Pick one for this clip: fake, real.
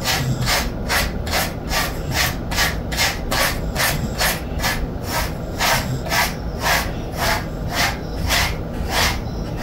real